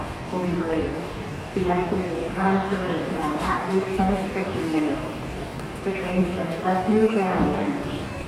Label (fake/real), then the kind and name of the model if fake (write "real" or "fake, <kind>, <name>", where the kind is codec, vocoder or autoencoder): fake, codec, DAC